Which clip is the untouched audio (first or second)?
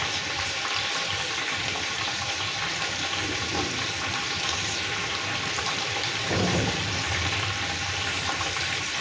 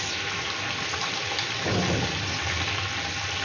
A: second